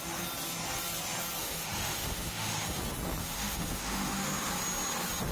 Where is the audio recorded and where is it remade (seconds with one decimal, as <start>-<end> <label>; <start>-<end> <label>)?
0.0-1.4 recorded; 1.4-2.8 remade; 2.8-3.2 recorded; 3.2-4.5 remade; 4.5-5.3 recorded